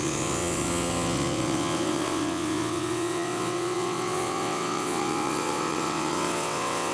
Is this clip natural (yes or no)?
no